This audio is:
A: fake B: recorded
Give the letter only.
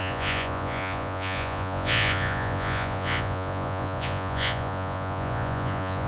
A